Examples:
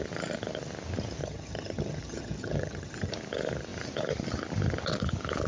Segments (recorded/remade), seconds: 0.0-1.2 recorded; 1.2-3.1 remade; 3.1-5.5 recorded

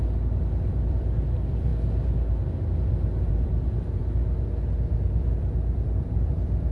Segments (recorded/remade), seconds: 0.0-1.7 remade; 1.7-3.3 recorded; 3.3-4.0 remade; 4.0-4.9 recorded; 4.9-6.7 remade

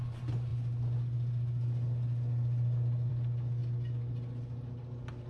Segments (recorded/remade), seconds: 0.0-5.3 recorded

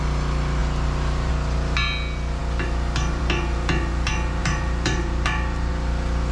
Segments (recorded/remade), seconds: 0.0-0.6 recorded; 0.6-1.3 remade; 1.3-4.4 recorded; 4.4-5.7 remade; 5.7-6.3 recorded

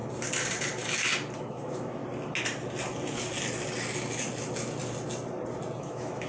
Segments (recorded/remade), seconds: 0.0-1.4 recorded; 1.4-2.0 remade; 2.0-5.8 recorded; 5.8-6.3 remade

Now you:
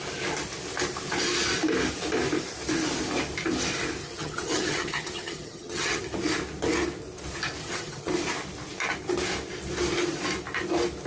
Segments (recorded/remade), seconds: 0.0-4.0 recorded; 4.0-6.0 remade; 6.0-7.6 recorded; 7.6-8.1 remade; 8.1-11.1 recorded